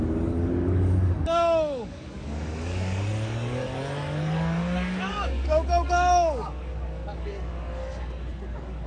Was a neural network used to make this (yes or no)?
yes